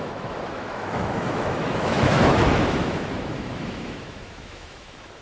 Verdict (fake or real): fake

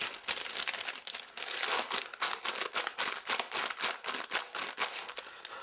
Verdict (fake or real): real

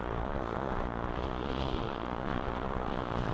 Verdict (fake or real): fake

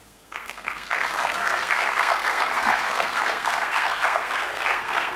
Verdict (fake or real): fake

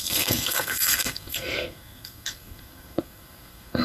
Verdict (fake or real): fake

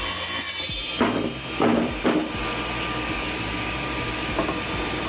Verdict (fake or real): real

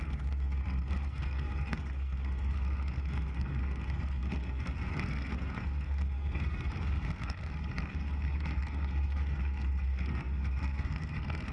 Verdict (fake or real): fake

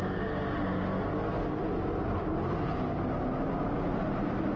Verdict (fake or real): real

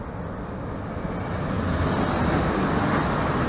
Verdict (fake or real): real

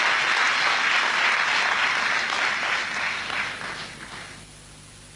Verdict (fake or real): real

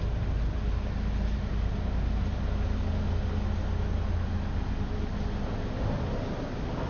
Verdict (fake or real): real